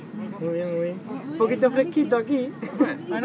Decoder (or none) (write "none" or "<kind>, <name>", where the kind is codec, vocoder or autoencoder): none